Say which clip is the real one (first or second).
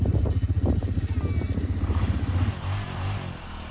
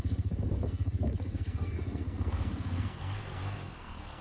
first